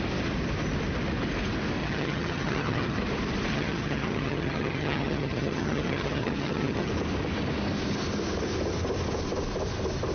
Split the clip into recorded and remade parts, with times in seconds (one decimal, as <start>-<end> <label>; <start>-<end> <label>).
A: 0.0-1.8 recorded; 1.8-3.0 remade; 3.0-3.5 recorded; 3.5-6.9 remade; 6.9-10.1 recorded